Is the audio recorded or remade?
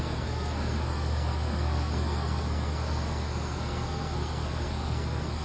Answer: remade